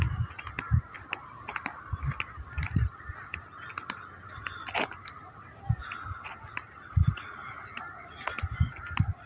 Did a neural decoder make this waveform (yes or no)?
no